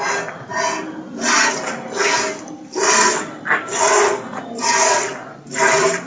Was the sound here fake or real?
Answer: real